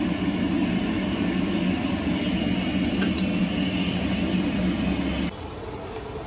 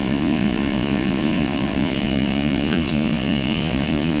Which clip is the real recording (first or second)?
first